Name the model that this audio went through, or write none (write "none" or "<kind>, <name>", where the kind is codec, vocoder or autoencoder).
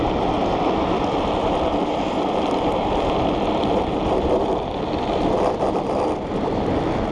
none